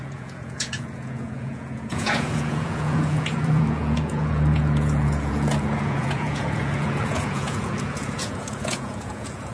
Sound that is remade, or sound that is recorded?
remade